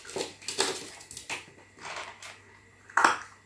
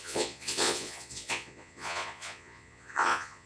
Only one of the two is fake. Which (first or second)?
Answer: second